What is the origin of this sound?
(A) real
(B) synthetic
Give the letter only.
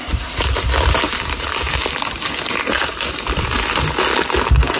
A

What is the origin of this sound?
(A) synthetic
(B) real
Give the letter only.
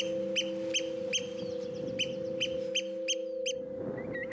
B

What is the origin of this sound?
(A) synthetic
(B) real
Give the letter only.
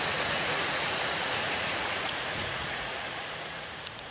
A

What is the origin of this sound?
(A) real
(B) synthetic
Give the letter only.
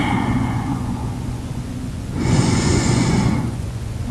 B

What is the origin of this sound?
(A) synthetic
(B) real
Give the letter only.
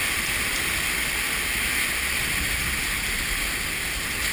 B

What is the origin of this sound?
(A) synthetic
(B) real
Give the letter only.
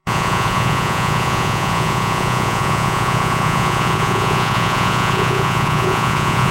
A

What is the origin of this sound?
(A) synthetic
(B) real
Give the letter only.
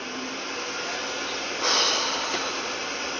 B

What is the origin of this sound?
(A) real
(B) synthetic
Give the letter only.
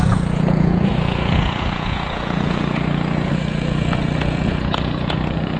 B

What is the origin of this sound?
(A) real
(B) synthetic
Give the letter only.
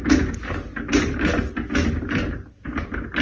A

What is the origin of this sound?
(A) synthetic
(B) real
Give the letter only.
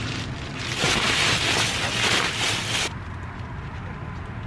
B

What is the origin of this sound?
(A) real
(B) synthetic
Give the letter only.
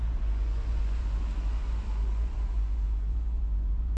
B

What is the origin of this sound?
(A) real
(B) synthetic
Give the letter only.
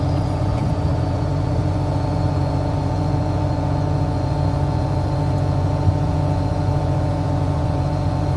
B